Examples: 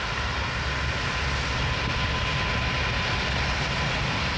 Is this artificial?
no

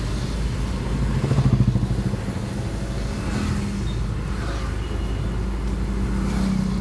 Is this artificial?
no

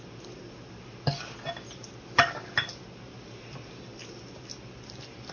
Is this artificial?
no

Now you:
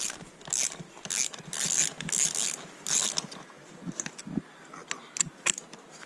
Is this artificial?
no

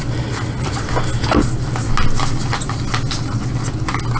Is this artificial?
no